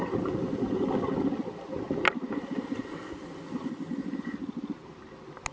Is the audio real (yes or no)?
yes